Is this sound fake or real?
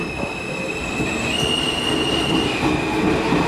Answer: real